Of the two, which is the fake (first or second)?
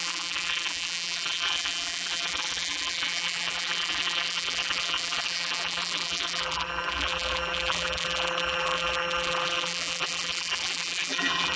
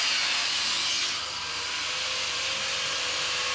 first